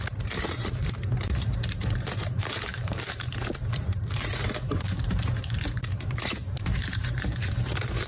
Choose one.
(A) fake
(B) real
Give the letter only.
A